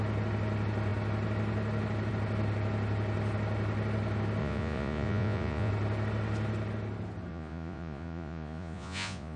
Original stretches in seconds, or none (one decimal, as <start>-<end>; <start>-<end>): 0.0-4.4; 5.7-7.3